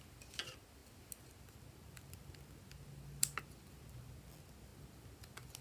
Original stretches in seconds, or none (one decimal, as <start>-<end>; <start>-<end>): 0.0-5.6